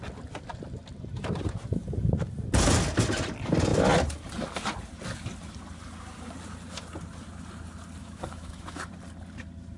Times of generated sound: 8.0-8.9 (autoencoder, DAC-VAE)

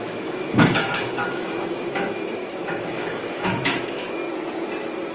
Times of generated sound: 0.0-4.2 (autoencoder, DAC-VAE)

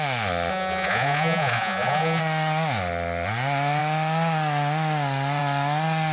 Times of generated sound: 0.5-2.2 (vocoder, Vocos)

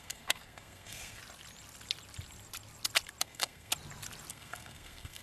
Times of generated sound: 0.0-1.2 (codec, SNAC); 3.2-3.7; 4.3-5.2

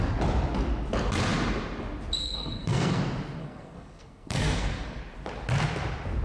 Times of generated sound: 2.2-3.0 (codec, SNAC); 3.4-5.0

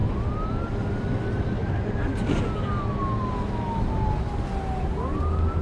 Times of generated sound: none